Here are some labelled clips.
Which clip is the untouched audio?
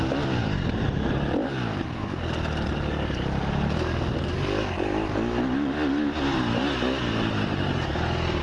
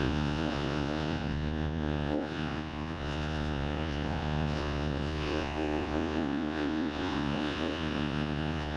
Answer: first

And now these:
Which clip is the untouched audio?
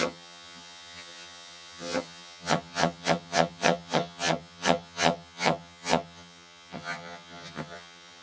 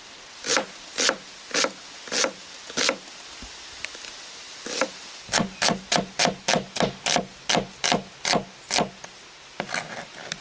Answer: second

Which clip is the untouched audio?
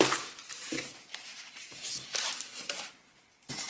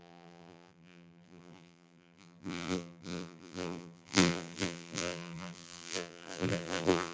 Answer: first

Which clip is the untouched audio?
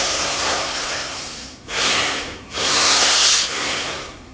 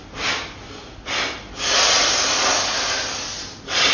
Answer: second